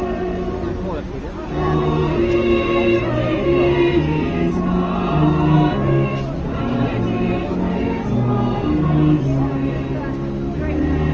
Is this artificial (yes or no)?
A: no